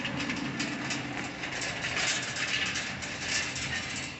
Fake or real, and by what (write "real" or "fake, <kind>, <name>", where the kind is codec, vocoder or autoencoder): real